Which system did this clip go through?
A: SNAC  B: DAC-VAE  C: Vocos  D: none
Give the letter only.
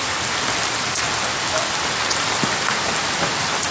D